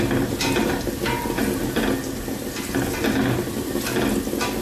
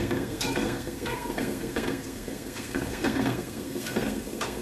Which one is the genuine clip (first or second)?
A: first